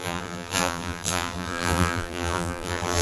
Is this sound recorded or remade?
remade